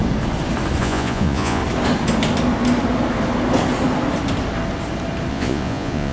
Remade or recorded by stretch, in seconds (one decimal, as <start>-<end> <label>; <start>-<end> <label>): 0.0-0.8 recorded; 0.8-1.6 remade; 1.6-5.3 recorded; 5.3-6.1 remade